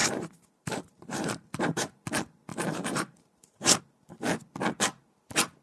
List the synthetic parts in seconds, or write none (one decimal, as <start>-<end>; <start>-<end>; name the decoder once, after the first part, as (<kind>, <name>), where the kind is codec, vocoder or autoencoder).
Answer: 0.0-2.0 (vocoder, BigVGAN v2); 2.5-3.8

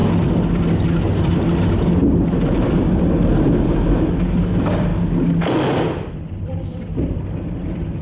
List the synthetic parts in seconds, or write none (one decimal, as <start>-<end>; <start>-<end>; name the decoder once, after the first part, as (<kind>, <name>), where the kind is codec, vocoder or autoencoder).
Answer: 2.3-4.9 (vocoder, BigVGAN v2); 6.1-8.0

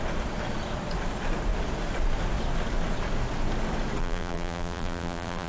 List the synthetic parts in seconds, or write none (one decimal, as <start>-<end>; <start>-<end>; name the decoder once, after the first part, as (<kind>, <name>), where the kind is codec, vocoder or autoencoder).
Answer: 4.0-5.5 (vocoder, BigVGAN v2)

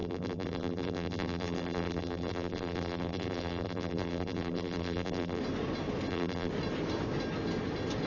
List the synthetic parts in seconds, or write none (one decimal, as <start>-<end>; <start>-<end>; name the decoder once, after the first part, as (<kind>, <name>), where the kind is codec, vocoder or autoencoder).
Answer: 0.0-5.4 (vocoder, BigVGAN v2); 6.1-6.5